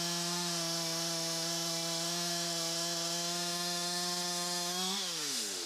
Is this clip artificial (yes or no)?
yes